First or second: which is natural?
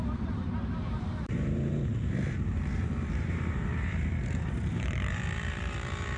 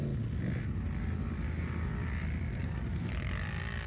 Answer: second